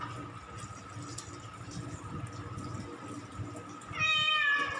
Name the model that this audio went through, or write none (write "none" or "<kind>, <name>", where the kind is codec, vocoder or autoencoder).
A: none